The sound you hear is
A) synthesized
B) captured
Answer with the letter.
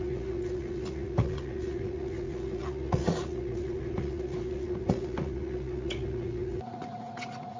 A